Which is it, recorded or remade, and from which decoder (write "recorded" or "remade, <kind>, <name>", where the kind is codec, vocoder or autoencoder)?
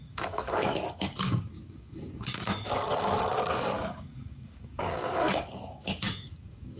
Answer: remade, codec, DAC